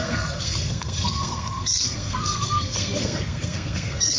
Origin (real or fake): fake